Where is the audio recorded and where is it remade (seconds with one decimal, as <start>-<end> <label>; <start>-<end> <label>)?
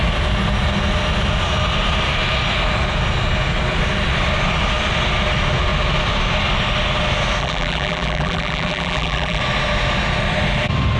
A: 0.0-7.4 recorded; 7.4-9.4 remade; 9.4-11.0 recorded